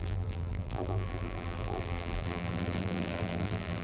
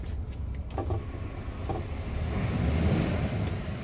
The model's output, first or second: first